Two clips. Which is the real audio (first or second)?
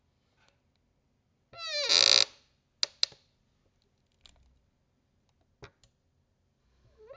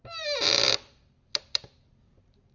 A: first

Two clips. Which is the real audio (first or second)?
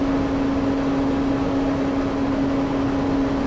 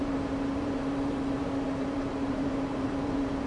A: first